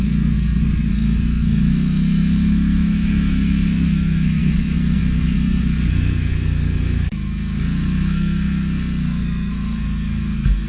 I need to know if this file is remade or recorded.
remade